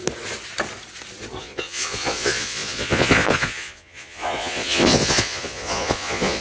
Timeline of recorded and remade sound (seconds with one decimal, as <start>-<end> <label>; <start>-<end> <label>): 0.0-1.4 recorded; 1.4-6.4 remade

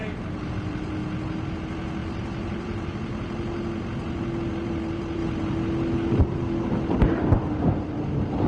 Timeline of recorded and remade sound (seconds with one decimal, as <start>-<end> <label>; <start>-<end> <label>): 0.0-1.0 remade; 1.0-1.6 recorded; 1.6-5.2 remade; 5.2-6.2 recorded; 6.2-8.5 remade

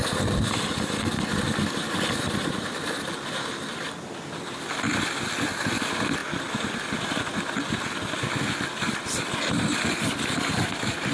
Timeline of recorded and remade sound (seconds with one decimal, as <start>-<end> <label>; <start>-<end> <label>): 0.0-11.1 recorded